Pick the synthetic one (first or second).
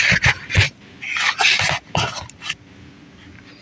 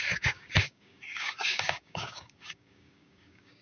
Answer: second